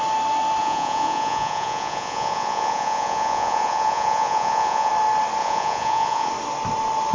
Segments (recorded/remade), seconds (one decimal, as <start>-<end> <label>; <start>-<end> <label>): 0.0-0.6 recorded; 0.6-4.9 remade; 4.9-5.4 recorded; 5.4-6.3 remade; 6.3-7.1 recorded